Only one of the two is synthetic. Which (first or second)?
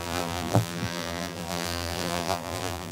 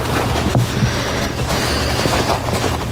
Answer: first